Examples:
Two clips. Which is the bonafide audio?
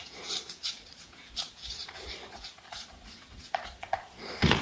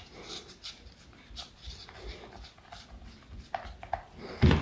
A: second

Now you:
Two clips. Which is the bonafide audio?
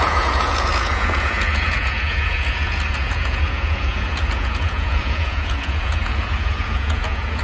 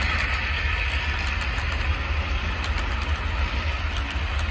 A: second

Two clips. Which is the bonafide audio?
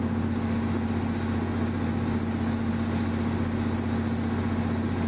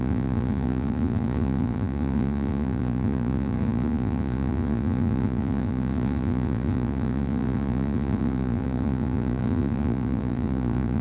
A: first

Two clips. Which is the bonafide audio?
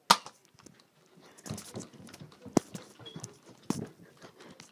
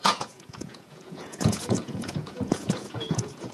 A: first